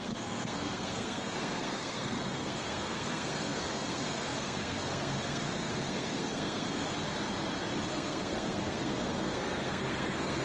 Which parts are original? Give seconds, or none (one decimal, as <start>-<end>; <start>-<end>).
6.8-7.9